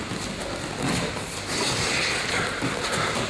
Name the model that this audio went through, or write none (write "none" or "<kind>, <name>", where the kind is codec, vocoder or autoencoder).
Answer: none